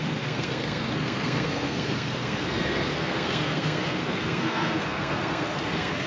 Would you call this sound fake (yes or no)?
yes